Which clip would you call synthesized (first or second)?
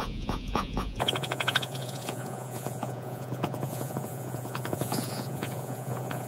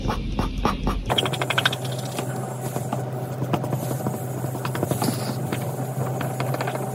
first